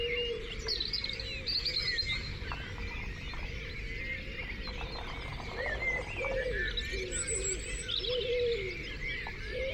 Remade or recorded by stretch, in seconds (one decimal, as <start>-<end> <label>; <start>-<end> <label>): 0.0-9.7 recorded